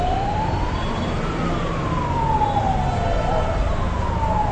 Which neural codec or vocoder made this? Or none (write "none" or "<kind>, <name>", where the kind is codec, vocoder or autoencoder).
none